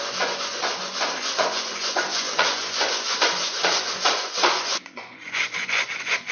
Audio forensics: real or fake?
fake